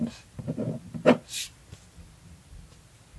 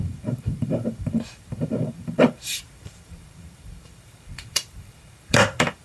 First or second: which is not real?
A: second